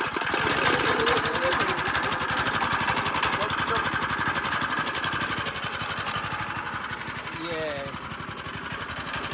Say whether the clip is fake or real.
real